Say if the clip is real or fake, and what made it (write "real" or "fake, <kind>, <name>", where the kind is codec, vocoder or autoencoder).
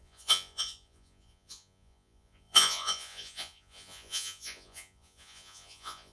fake, vocoder, Vocos